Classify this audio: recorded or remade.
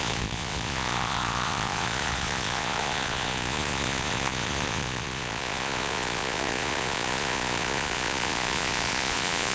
remade